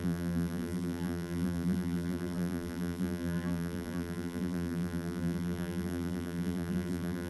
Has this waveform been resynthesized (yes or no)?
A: yes